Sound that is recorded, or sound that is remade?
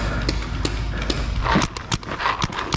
recorded